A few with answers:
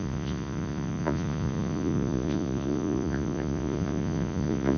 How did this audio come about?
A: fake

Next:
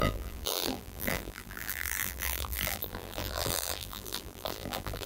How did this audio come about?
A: fake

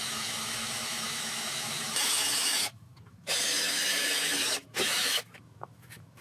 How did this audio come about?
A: fake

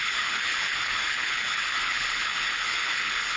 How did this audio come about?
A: fake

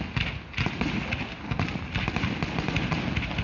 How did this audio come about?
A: real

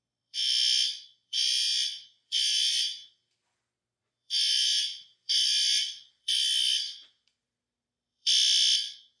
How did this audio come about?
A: fake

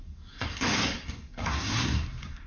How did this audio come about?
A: fake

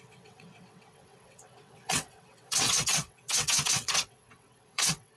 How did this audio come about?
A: fake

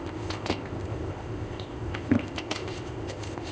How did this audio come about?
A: fake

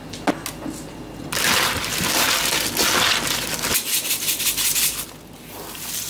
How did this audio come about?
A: real